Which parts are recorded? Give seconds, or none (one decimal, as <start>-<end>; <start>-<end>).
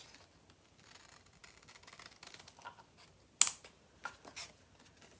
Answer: 0.0-5.2